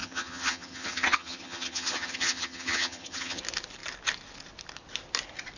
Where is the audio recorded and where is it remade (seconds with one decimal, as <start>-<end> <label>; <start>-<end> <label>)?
0.0-3.4 remade; 3.4-5.6 recorded